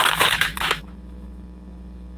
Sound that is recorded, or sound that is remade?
remade